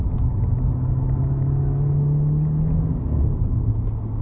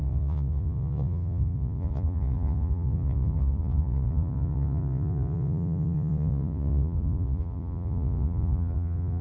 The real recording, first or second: first